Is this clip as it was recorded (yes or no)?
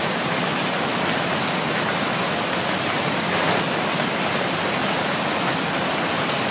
yes